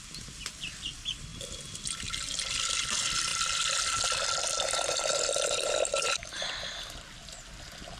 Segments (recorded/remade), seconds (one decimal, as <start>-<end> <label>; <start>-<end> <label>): 0.0-8.0 recorded